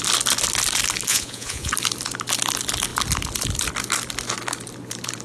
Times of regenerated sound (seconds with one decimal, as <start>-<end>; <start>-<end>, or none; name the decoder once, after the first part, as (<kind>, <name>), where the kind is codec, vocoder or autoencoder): 1.1-1.7 (vocoder, Vocos)